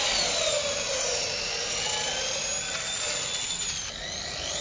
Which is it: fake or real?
real